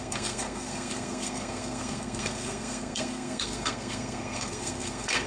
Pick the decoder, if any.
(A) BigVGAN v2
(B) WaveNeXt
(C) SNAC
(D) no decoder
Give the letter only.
C